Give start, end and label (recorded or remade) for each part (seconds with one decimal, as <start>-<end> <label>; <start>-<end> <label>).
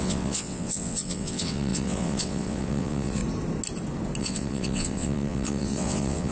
0.0-3.2 remade; 3.2-4.2 recorded; 4.2-6.3 remade